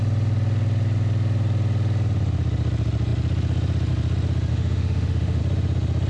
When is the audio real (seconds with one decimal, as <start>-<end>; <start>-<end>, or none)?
0.0-4.5; 5.4-6.1